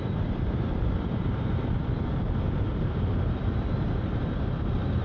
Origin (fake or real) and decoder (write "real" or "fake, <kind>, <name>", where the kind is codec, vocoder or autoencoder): fake, vocoder, BigVGAN v2